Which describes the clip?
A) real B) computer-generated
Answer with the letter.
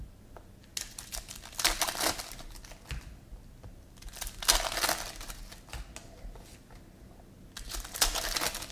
A